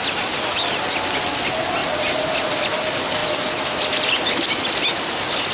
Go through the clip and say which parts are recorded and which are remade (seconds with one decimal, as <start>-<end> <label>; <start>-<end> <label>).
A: 0.0-5.5 recorded